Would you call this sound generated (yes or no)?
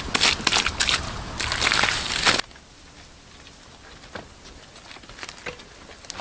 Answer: no